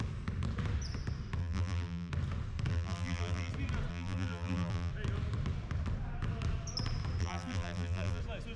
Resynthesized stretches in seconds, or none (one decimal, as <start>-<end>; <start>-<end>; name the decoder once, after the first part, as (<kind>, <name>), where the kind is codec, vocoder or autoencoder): 1.4-2.1 (vocoder, BigVGAN v2); 2.7-3.5; 3.9-4.9; 7.2-8.2